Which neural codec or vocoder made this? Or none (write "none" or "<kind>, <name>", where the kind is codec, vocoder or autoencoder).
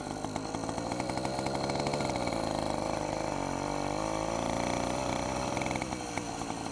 none